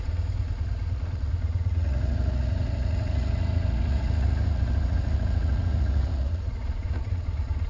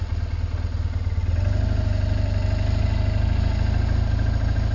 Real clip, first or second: second